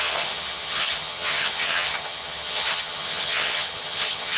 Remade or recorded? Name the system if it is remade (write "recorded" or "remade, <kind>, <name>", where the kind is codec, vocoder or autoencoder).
remade, vocoder, HiFi-GAN